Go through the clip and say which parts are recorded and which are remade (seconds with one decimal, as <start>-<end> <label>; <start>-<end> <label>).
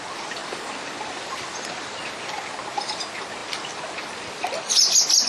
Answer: 0.0-5.3 recorded